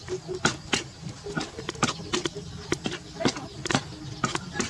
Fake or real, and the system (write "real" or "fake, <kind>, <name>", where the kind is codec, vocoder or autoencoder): real